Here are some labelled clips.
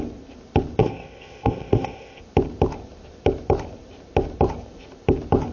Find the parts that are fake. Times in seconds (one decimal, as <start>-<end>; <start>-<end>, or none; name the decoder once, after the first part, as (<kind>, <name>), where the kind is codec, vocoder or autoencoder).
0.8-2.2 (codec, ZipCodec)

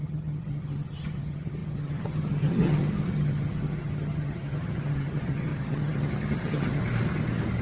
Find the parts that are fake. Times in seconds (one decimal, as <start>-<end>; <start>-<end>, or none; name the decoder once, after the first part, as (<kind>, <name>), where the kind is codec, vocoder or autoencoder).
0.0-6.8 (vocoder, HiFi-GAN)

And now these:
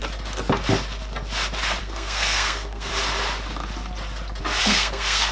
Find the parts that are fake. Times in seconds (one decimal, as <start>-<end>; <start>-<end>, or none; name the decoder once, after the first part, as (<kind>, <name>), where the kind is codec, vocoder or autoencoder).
1.8-2.9 (codec, SNAC); 4.6-5.3